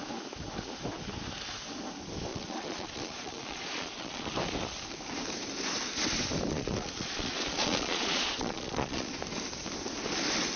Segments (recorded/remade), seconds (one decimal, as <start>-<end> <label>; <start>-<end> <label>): 0.0-2.3 recorded; 2.3-4.3 remade; 4.3-6.5 recorded; 6.5-9.1 remade; 9.1-10.6 recorded